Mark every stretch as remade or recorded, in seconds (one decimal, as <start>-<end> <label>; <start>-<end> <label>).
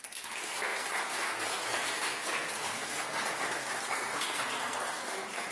0.0-5.5 remade